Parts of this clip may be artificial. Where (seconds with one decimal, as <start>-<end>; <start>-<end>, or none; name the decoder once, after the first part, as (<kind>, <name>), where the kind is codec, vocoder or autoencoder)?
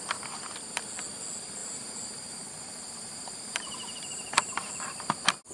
1.6-4.7 (vocoder, BigVGAN v2)